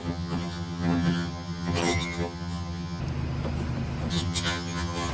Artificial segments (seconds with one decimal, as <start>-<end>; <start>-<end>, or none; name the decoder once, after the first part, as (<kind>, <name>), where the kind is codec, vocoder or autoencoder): 0.0-3.0 (vocoder, HiFi-GAN); 4.1-5.1